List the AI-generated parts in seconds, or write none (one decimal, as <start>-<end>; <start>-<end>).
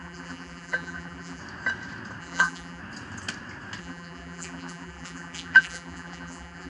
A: 0.0-1.4; 2.2-2.8; 3.8-6.7